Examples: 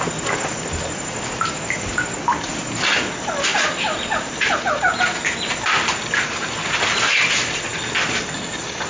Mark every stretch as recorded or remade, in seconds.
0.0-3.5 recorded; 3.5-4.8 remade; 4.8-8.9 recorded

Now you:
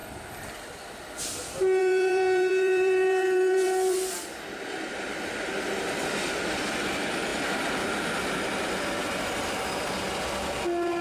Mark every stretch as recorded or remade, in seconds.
0.0-0.9 remade; 0.9-1.8 recorded; 1.8-6.3 remade; 6.3-7.3 recorded; 7.3-8.7 remade; 8.7-11.0 recorded

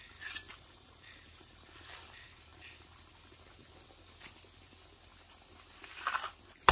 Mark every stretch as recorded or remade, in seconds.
0.0-0.5 recorded; 0.5-1.8 remade; 1.8-6.7 recorded